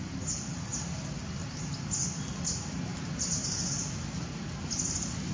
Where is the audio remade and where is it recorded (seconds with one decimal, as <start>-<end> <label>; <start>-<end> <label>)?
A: 0.0-5.3 recorded